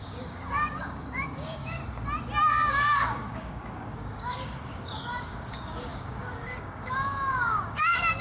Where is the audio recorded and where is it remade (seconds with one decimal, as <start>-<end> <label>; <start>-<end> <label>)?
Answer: 0.0-1.8 remade; 1.8-2.7 recorded; 2.7-8.2 remade